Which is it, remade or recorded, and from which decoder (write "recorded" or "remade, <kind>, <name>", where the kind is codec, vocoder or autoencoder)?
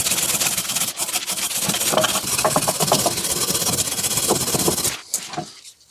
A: recorded